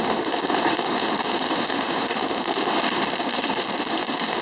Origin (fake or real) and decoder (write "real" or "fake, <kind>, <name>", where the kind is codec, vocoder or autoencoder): fake, autoencoder, DAC-VAE